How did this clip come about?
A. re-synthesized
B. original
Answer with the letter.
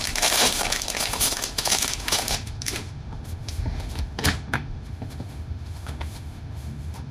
A